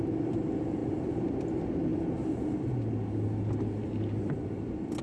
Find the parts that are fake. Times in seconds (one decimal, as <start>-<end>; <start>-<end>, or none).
0.8-1.3